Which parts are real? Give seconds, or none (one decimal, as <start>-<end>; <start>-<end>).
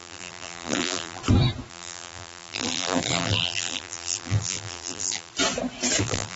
1.2-1.7; 5.3-6.0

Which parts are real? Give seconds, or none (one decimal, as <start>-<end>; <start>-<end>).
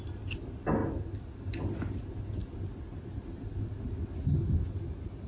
0.0-5.3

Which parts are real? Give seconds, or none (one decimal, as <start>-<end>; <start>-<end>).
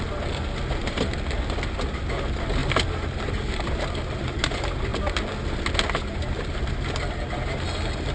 0.0-0.8; 1.6-2.6; 4.2-6.2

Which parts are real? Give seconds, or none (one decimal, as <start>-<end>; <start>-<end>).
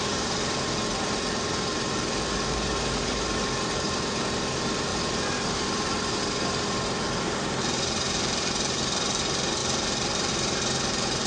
none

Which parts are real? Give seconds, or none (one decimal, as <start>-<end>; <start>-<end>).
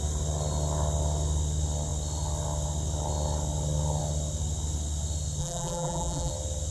0.0-5.4; 6.3-6.7